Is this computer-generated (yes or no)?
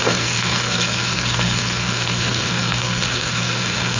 yes